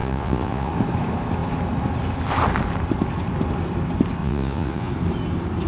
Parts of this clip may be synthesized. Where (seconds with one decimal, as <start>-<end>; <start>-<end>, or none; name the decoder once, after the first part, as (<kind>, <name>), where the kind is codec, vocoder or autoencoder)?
0.0-0.7 (vocoder, Vocos); 4.2-4.9